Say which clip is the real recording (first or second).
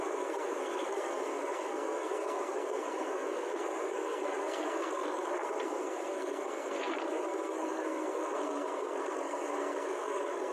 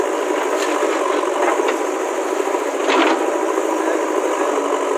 second